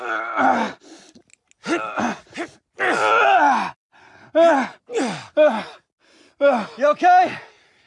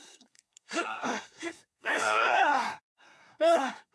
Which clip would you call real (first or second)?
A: first